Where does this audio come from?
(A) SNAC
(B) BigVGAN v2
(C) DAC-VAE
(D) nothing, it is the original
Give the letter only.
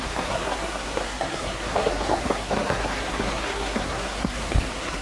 A